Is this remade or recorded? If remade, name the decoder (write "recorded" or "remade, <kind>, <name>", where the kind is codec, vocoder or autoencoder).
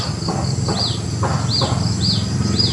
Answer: recorded